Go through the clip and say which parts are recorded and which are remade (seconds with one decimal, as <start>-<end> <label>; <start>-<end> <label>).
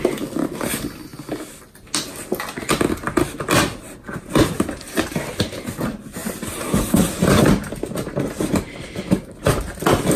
0.0-10.2 recorded